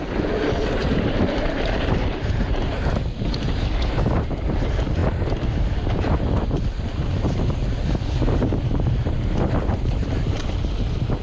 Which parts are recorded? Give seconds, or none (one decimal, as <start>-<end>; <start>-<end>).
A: 0.0-0.8; 2.9-9.7; 10.4-11.2